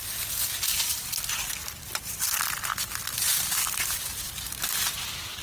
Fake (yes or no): no